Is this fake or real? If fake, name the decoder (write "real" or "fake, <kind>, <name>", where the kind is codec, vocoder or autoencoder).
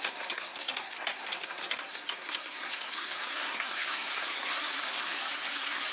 fake, codec, SNAC